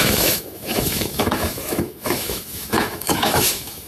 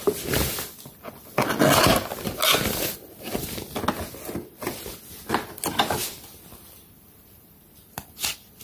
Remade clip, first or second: first